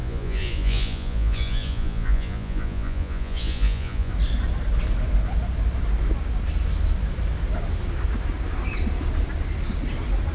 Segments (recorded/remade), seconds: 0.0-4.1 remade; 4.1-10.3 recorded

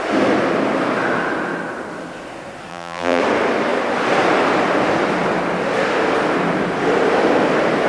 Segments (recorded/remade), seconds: 0.0-2.7 recorded; 2.7-3.2 remade; 3.2-7.9 recorded

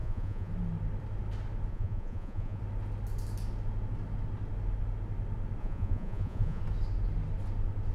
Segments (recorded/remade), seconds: 0.0-0.5 remade; 0.5-1.7 recorded; 1.7-2.6 remade; 2.6-5.6 recorded; 5.6-6.6 remade; 6.6-7.9 recorded

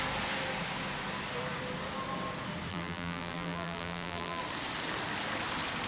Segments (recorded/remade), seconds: 0.0-2.7 recorded; 2.7-4.4 remade; 4.4-5.9 recorded

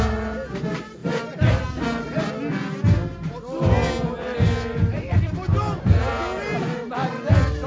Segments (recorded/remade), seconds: 0.0-1.0 recorded; 1.0-2.3 remade; 2.3-7.7 recorded

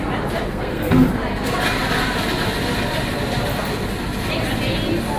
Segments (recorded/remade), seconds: 0.0-0.5 recorded; 0.5-1.1 remade; 1.1-5.2 recorded

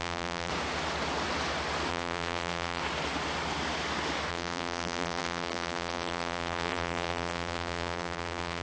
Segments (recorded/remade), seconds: 0.0-0.5 remade; 0.5-1.9 recorded; 1.9-2.8 remade; 2.8-4.3 recorded; 4.3-8.6 remade